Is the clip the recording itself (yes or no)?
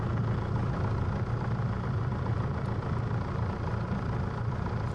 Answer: yes